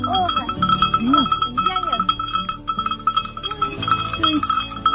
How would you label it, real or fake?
real